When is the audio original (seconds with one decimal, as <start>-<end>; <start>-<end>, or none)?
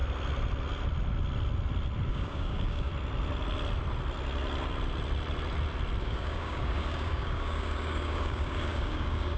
0.0-2.1; 2.9-6.0